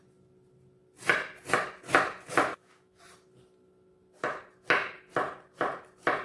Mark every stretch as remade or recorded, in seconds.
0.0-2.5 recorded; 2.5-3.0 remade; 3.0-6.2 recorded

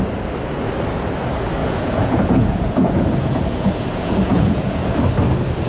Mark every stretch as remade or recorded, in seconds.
0.0-1.6 recorded; 1.6-5.0 remade; 5.0-5.7 recorded

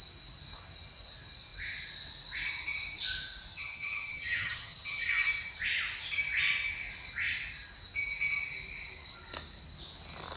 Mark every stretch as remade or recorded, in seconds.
0.0-3.5 recorded; 3.5-5.0 remade; 5.0-10.4 recorded

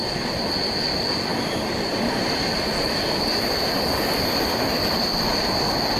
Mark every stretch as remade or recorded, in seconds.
0.0-6.0 recorded

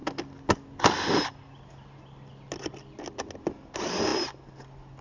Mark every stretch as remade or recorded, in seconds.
0.0-5.0 recorded

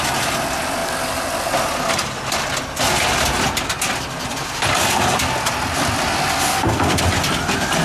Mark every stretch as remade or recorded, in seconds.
0.0-6.5 recorded; 6.5-7.0 remade; 7.0-7.8 recorded

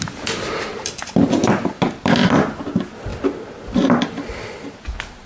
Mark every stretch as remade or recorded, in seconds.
0.0-5.3 recorded